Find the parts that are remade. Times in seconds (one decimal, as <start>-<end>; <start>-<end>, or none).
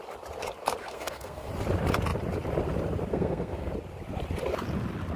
0.8-1.5; 3.1-3.7